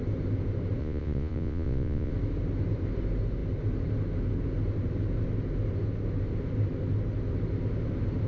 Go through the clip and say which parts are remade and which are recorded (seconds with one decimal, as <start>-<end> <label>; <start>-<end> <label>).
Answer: 0.0-0.8 recorded; 0.8-2.1 remade; 2.1-8.3 recorded